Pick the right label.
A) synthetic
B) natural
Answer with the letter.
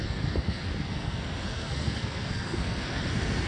A